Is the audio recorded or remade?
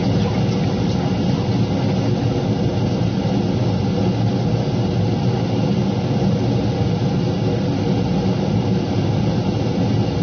recorded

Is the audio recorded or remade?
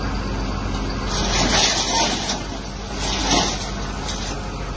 recorded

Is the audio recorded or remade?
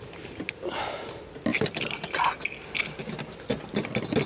recorded